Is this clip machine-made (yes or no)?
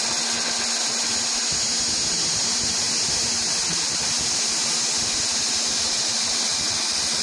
no